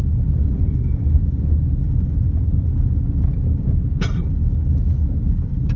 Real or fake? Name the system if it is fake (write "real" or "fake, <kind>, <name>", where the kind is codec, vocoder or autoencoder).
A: real